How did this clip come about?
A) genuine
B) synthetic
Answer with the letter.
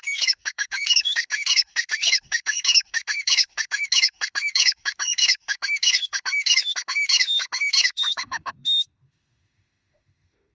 B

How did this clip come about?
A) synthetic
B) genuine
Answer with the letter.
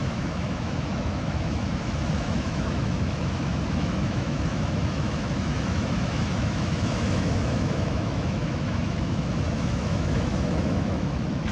A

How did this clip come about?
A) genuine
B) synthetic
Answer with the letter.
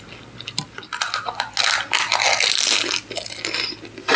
A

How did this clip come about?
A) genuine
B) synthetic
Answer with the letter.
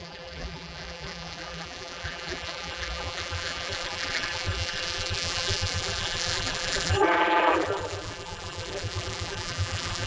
B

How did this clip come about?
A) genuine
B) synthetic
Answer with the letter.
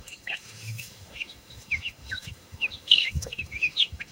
B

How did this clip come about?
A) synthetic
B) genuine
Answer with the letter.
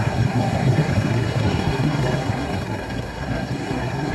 A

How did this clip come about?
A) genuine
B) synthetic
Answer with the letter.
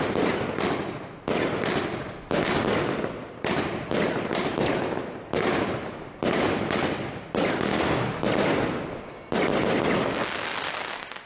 A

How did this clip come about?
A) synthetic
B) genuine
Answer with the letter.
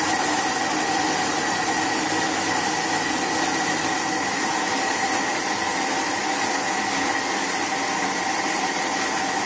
B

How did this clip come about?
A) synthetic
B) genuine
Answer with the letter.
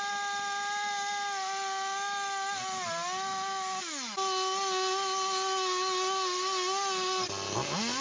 B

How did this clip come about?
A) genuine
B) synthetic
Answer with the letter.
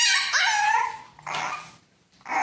A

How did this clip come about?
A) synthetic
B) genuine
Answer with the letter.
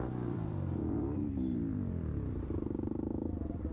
A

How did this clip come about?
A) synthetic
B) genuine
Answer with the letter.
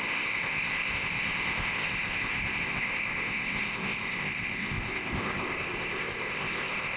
A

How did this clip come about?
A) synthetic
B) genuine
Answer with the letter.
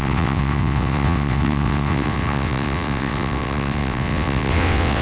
A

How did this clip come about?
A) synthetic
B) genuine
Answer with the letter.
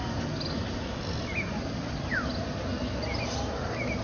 B